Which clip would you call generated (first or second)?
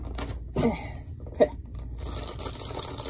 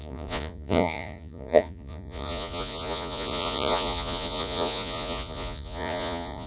second